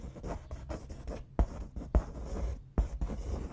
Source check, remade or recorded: recorded